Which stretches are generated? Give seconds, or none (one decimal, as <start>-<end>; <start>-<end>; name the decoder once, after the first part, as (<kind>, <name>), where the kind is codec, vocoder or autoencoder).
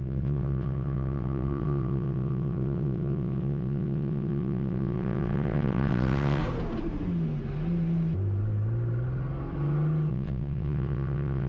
0.0-6.4 (vocoder, WaveNeXt); 10.1-11.5